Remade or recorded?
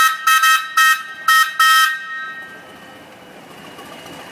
recorded